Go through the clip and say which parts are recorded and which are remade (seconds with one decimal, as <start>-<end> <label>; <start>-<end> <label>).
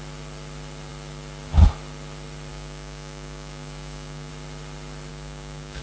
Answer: 0.0-2.5 recorded; 2.5-4.3 remade; 4.3-5.1 recorded; 5.1-5.8 remade